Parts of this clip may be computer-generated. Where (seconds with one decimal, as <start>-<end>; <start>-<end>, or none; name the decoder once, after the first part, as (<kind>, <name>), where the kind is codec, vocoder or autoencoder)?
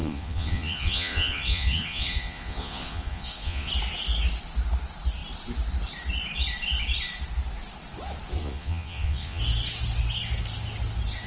0.0-3.7 (vocoder, Vocos); 8.4-9.4